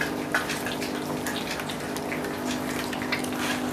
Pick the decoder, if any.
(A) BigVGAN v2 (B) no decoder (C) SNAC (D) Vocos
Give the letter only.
B